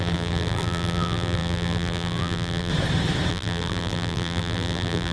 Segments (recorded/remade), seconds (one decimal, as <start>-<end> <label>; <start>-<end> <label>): 0.0-2.7 remade; 2.7-3.3 recorded; 3.3-5.1 remade